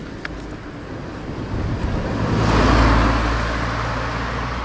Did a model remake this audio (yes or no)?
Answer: no